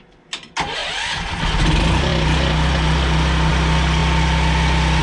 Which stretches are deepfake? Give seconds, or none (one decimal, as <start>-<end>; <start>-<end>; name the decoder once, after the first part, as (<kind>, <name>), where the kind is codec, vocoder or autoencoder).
0.8-1.3 (vocoder, BigVGAN v2)